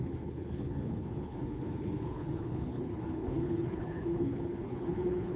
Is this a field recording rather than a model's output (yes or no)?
no